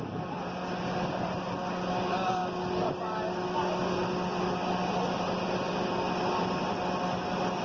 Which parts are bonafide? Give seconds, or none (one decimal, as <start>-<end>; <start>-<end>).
0.0-7.6